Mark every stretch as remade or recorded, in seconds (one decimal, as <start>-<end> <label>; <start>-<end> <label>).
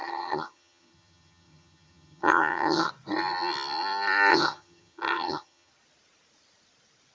0.0-2.9 remade; 2.9-4.3 recorded; 4.3-5.7 remade; 5.7-7.1 recorded